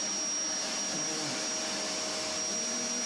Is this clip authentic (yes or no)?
yes